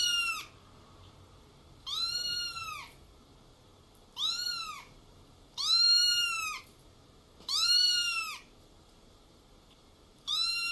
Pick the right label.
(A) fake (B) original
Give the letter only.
A